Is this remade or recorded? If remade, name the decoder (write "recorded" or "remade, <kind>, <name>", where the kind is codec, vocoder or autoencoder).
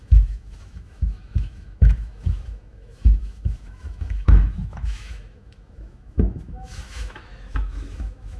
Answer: remade, autoencoder, DAC-VAE